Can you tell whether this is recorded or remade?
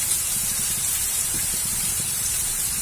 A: remade